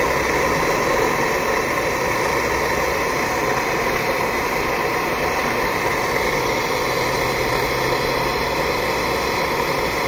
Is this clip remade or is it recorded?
recorded